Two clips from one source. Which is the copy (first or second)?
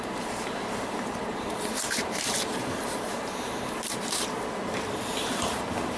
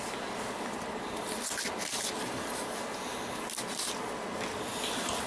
first